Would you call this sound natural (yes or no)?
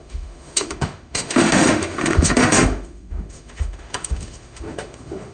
no